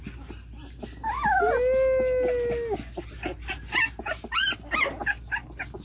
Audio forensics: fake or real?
real